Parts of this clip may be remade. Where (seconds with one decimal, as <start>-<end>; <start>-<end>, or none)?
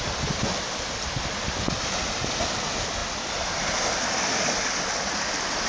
none